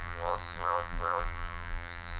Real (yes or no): no